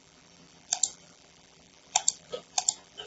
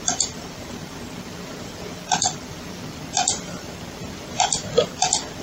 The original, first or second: second